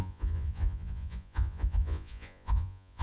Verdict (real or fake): fake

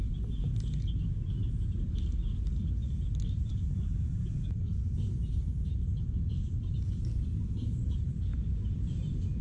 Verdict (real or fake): fake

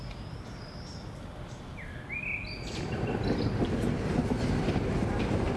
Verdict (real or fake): real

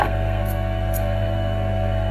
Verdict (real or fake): fake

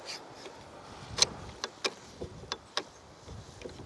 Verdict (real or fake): real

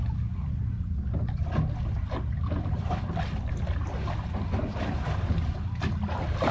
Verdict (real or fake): real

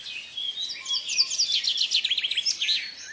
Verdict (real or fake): real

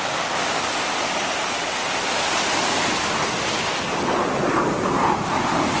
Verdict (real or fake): real